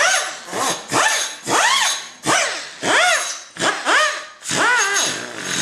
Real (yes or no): yes